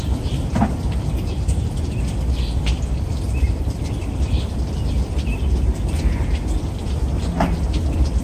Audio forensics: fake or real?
fake